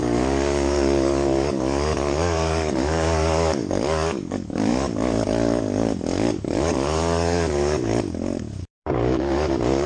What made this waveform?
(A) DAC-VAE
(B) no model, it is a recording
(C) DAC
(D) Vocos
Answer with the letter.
C